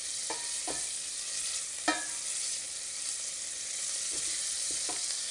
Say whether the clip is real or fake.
real